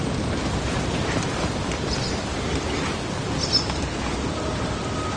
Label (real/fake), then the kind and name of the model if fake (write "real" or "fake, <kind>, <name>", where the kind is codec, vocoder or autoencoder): real